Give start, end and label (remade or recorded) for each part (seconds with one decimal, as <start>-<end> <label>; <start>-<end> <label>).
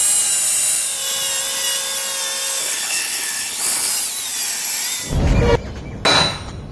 0.0-2.6 recorded; 2.6-3.9 remade; 3.9-6.7 recorded